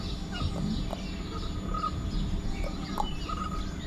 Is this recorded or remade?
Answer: recorded